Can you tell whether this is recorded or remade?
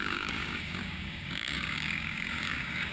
remade